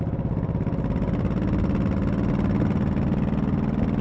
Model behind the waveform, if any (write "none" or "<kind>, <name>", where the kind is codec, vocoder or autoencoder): none